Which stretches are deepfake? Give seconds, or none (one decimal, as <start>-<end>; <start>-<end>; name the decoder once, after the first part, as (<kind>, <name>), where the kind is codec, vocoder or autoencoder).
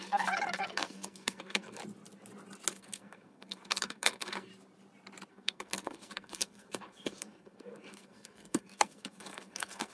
0.0-1.8 (codec, SNAC); 2.7-4.5; 5.3-9.9